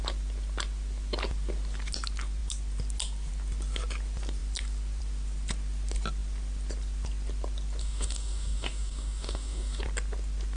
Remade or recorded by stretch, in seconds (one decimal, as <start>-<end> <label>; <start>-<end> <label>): 0.0-7.8 recorded; 7.8-9.8 remade; 9.8-10.6 recorded